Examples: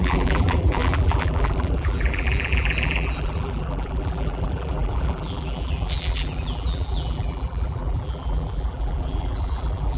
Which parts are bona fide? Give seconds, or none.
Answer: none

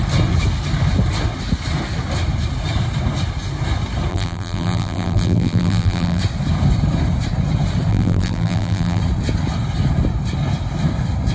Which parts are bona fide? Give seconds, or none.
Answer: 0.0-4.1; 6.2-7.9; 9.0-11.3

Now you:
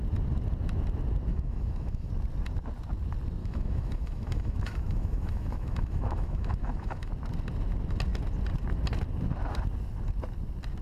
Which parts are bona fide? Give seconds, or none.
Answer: 0.0-1.3; 2.1-3.4; 7.1-10.8

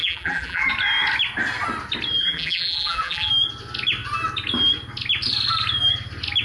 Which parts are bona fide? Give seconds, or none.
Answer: 0.7-2.2; 3.3-6.4

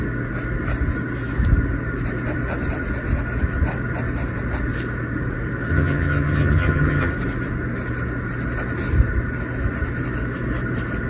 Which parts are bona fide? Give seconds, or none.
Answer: 0.0-5.7; 7.1-11.1

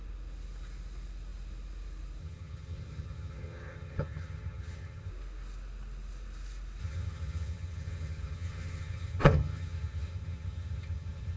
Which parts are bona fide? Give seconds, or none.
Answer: 0.0-2.2; 5.1-6.8

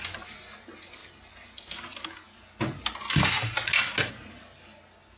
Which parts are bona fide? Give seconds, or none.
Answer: 0.0-5.2

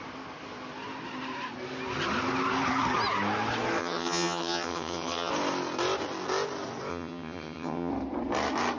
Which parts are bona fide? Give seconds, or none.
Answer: 0.0-3.8; 5.3-6.9; 7.9-8.8